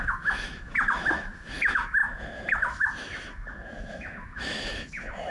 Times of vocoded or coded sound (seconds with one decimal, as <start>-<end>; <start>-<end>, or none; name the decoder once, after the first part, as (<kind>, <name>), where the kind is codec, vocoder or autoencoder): 0.0-5.3 (autoencoder, DAC-VAE)